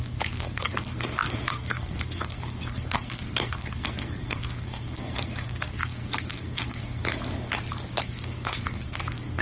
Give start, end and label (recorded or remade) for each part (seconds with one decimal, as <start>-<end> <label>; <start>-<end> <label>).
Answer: 0.0-7.0 remade; 7.0-8.0 recorded; 8.0-9.4 remade